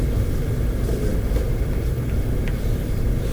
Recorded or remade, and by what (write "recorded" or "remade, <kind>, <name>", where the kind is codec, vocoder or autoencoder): recorded